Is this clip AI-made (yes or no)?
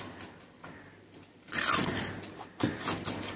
yes